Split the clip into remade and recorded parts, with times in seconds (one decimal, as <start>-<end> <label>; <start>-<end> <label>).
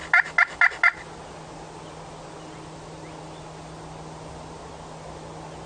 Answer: 0.0-5.7 recorded